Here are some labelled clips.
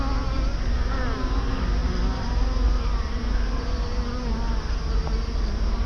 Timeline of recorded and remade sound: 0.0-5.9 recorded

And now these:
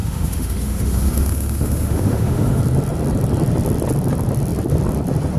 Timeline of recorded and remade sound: 0.0-2.6 remade; 2.6-5.4 recorded

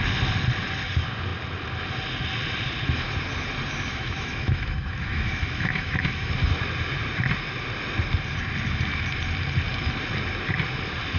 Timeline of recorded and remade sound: 0.0-3.9 recorded; 3.9-6.3 remade; 6.3-11.2 recorded

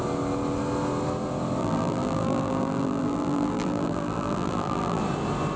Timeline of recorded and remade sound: 0.0-1.6 recorded; 1.6-5.0 remade; 5.0-5.6 recorded

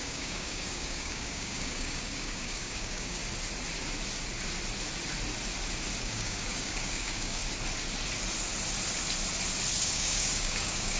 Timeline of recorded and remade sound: 0.0-3.2 remade; 3.2-6.0 recorded; 6.0-7.4 remade; 7.4-9.8 recorded; 9.8-11.0 remade

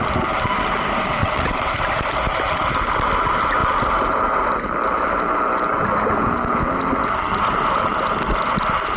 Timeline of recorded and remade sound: 0.0-1.2 recorded; 1.2-1.7 remade; 1.7-9.0 recorded

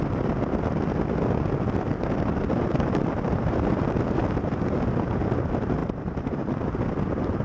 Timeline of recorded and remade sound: 0.0-2.5 recorded; 2.5-4.2 remade; 4.2-5.8 recorded; 5.8-6.5 remade; 6.5-7.4 recorded

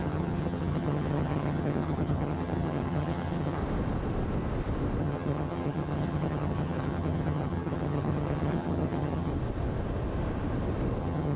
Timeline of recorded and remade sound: 0.0-3.6 remade; 3.6-5.0 recorded; 5.0-9.3 remade; 9.3-11.0 recorded; 11.0-11.4 remade